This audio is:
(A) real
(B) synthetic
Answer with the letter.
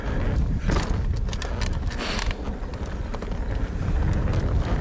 A